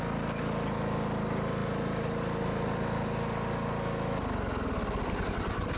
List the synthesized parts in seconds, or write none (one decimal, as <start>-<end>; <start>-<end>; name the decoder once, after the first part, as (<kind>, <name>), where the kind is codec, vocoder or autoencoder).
none